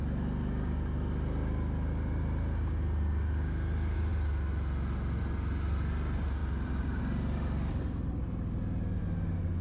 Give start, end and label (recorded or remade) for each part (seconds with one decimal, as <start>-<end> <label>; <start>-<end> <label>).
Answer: 0.0-6.4 recorded; 6.4-7.0 remade; 7.0-9.6 recorded